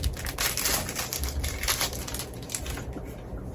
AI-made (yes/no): no